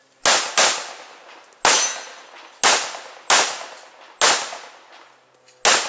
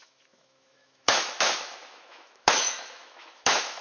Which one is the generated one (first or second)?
second